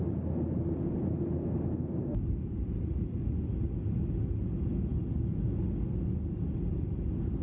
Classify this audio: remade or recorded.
recorded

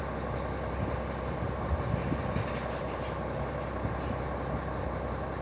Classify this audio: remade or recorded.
remade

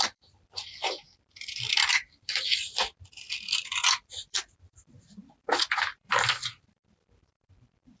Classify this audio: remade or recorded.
remade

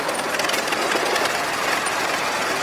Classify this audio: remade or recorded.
recorded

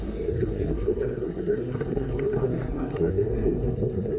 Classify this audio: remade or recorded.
remade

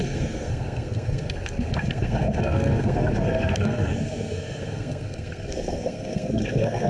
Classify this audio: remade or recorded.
remade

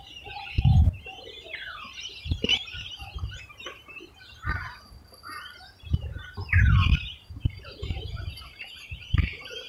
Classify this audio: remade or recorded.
remade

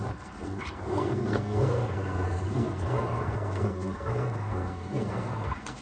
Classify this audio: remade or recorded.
remade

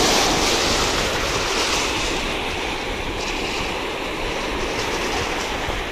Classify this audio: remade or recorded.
recorded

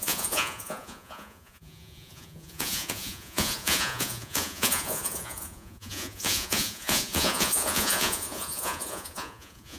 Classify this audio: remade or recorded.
remade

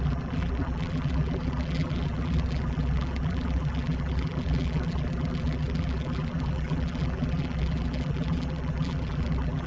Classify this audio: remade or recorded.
remade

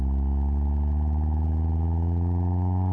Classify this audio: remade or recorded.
recorded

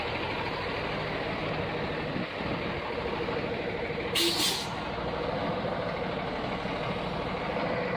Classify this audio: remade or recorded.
recorded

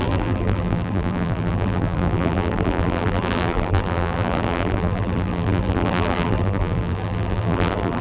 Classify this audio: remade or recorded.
remade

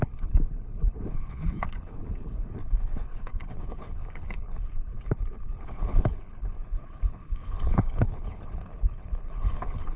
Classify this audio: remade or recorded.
remade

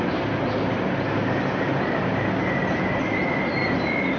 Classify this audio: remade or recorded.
recorded